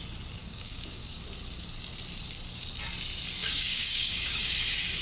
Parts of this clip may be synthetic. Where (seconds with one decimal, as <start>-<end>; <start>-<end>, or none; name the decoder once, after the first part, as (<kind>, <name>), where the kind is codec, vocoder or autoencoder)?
0.4-1.2 (codec, DAC); 3.4-4.4